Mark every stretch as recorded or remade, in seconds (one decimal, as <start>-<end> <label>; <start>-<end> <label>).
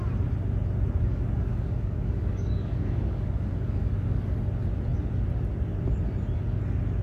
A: 0.0-1.1 recorded; 1.1-4.4 remade; 4.4-7.0 recorded